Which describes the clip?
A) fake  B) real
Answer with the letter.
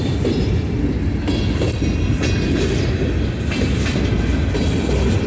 B